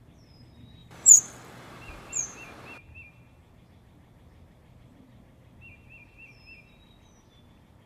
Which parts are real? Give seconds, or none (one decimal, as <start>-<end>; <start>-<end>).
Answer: 0.0-0.8; 2.1-7.9